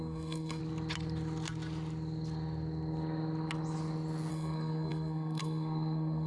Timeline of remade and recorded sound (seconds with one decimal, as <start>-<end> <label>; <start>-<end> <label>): 0.0-0.6 remade; 0.6-4.3 recorded; 4.3-6.3 remade